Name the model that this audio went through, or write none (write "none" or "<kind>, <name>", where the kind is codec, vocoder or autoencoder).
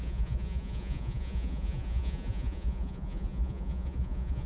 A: vocoder, Vocos